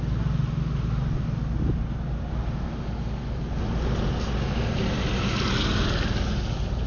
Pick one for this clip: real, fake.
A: real